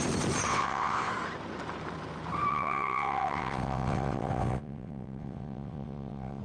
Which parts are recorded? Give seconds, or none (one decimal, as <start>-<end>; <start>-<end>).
0.0-0.5; 1.1-2.5